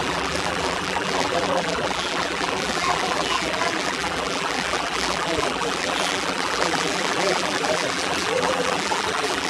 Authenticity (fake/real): fake